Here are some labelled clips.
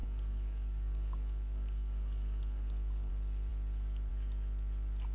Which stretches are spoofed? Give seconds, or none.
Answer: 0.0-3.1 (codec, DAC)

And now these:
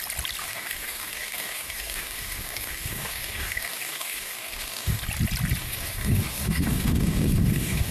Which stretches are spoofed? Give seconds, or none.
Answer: 0.4-5.0 (codec, DAC); 5.6-7.9

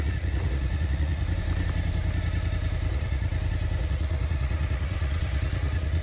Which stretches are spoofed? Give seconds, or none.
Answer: 0.0-1.2 (vocoder, Vocos); 2.9-3.3; 3.8-6.0

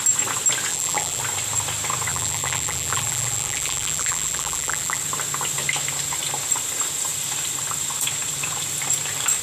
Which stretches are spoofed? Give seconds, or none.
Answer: 0.7-1.2 (vocoder, BigVGAN v2); 2.1-5.0

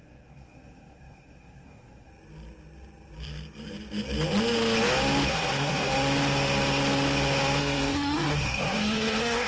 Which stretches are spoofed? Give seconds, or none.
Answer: 0.0-2.1 (codec, SNAC); 5.3-5.9; 7.6-9.5